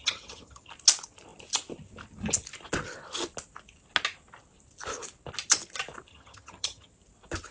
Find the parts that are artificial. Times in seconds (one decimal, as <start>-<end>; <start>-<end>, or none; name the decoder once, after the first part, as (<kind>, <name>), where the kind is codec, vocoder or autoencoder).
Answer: 0.0-0.7 (vocoder, HiFi-GAN); 6.1-6.9